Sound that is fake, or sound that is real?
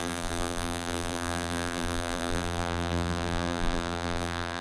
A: fake